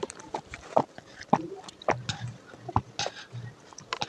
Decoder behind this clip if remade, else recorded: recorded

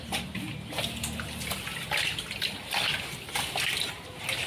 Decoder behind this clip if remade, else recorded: recorded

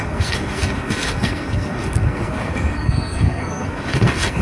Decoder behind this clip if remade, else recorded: remade, codec, SNAC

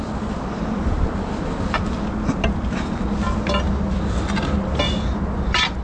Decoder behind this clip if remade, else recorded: recorded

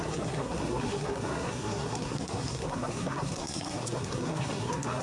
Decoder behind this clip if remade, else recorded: remade, codec, SNAC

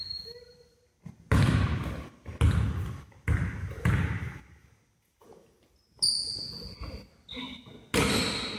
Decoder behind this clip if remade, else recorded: recorded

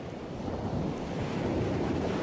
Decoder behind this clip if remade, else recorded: recorded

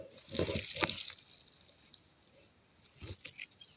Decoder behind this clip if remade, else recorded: recorded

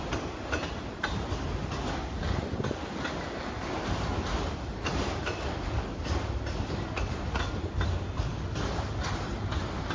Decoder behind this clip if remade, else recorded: recorded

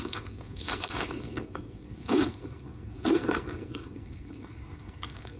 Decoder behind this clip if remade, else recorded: remade, codec, SNAC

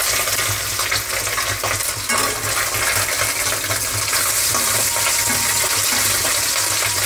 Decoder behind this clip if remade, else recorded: recorded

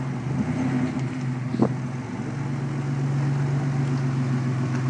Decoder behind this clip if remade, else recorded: recorded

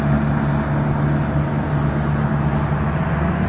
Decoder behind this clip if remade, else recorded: recorded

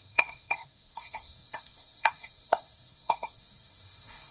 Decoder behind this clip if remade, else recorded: remade, codec, SNAC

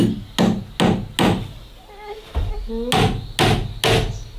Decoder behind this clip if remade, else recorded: recorded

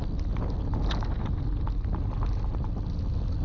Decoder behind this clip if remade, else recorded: recorded